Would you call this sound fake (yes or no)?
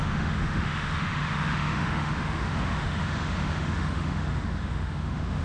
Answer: yes